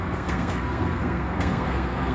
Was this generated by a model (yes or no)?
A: yes